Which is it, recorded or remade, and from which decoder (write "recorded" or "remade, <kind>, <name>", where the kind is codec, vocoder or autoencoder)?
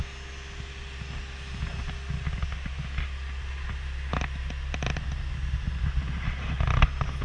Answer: recorded